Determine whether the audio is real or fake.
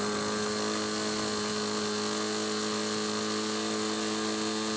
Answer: real